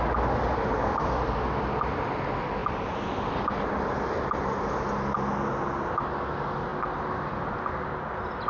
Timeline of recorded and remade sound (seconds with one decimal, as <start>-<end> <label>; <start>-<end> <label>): 0.0-8.5 recorded